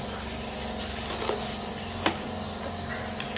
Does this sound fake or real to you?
real